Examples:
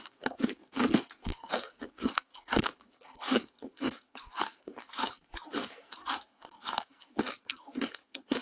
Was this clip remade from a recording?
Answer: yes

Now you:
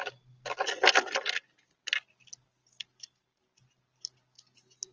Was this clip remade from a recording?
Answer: no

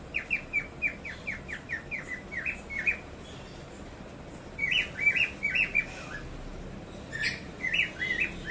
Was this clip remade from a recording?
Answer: no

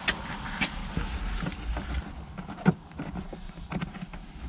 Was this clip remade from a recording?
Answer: no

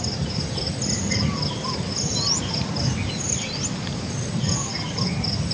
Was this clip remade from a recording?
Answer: no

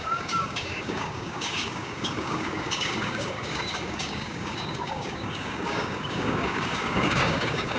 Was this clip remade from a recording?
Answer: yes